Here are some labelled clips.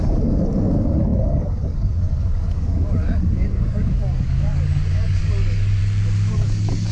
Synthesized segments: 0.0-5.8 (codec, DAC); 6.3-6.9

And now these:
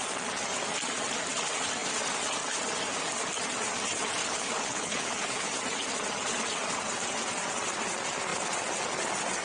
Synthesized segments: 4.2-5.5 (codec, HILCodec)

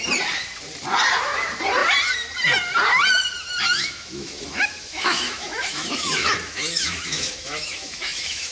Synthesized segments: 3.6-8.5 (autoencoder, DAC-VAE)

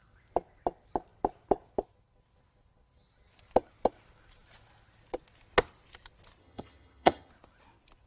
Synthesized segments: 6.4-7.3 (vocoder, HiFi-GAN)

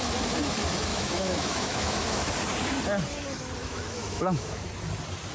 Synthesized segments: 0.9-2.3 (autoencoder, DAC-VAE); 3.6-4.7